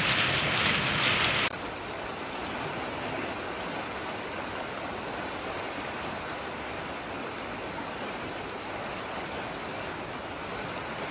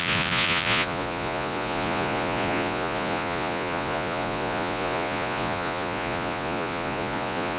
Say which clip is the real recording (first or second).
first